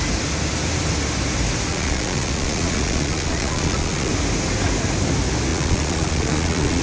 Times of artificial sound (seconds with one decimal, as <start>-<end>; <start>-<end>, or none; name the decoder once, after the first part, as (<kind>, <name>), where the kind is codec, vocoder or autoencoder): 1.7-4.1 (vocoder, Vocos); 5.5-6.8